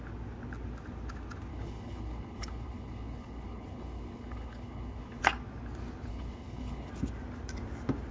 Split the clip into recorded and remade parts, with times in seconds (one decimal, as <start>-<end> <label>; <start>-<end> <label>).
0.0-1.5 recorded; 1.5-5.2 remade; 5.2-6.1 recorded; 6.1-6.9 remade; 6.9-8.1 recorded